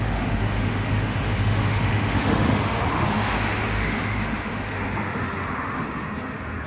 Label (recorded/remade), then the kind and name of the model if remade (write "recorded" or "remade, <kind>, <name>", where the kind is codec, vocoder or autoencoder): remade, autoencoder, DAC-VAE